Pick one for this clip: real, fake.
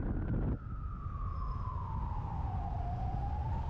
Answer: real